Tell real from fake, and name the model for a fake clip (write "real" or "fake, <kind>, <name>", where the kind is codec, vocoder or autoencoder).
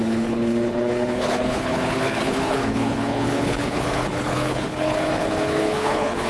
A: fake, codec, HILCodec